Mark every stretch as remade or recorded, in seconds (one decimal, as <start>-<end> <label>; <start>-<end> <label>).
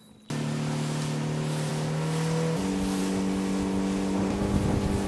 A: 0.0-5.1 recorded